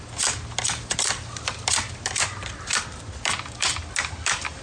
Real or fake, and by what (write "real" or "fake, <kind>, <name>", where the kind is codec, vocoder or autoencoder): real